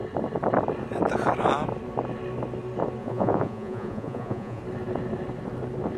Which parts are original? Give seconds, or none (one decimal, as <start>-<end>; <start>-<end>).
0.0-3.0; 4.6-6.0